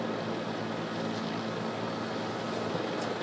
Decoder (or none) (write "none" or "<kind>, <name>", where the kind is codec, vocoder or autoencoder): none